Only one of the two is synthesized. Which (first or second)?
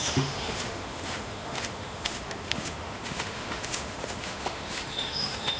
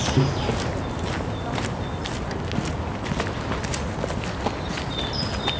first